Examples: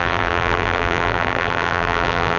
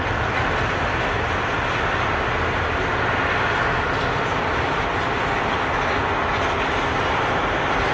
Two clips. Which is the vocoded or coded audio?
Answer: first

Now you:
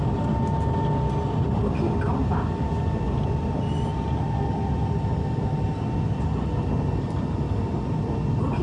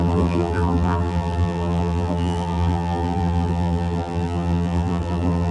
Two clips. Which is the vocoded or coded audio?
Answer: second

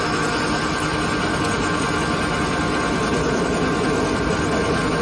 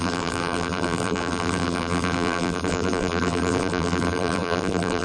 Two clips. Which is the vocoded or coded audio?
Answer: second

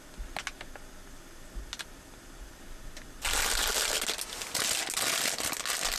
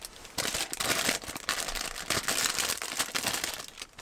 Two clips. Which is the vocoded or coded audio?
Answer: second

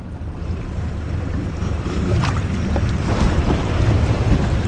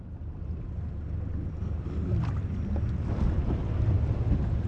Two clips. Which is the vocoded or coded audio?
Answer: first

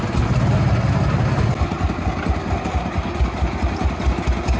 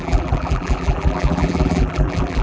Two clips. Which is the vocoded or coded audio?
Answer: second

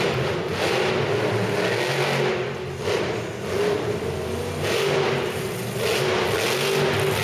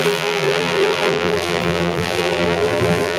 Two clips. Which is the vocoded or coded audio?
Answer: second